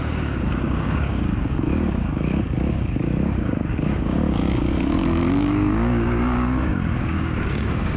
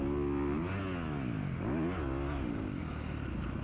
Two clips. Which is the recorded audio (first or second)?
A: second